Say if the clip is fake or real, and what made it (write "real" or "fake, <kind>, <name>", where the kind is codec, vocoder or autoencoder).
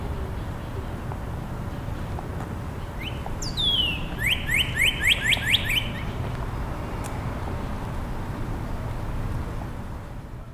real